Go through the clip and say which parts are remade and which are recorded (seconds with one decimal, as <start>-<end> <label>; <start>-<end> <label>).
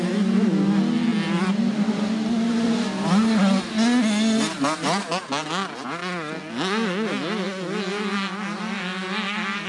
0.0-9.7 recorded